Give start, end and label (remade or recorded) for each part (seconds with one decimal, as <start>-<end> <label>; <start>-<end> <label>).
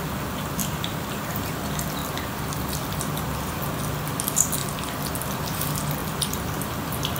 0.0-0.6 recorded; 0.6-1.6 remade; 1.6-7.2 recorded